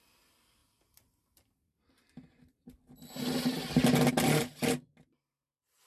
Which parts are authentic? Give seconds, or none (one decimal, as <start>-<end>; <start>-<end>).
0.0-5.9